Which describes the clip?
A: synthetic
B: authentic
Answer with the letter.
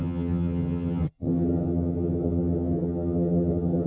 A